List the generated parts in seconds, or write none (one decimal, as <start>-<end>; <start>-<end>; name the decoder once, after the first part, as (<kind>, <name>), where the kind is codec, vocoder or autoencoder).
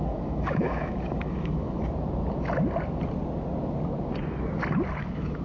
0.0-1.8 (autoencoder, DAC-VAE); 5.0-5.4